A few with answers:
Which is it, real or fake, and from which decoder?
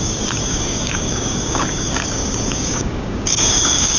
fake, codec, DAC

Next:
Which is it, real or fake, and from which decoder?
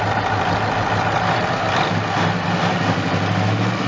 real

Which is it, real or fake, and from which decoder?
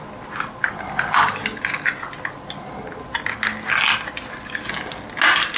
real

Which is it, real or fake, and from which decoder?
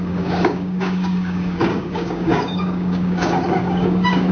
fake, codec, DAC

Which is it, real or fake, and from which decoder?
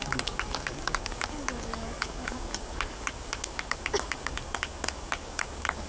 fake, codec, DAC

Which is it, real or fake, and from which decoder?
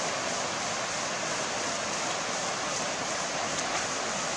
real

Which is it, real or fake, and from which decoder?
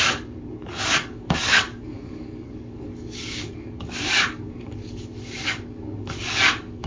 fake, codec, DAC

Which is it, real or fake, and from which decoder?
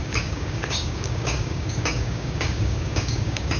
fake, codec, DAC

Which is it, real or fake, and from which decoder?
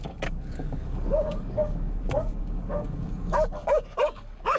fake, codec, DAC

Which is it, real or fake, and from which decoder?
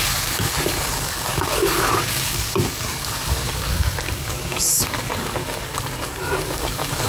fake, codec, DAC